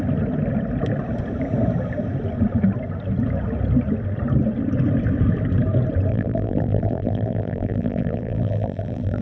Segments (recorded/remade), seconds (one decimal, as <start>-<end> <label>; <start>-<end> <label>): 0.0-6.1 recorded; 6.1-9.2 remade